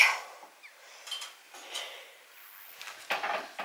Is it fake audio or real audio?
real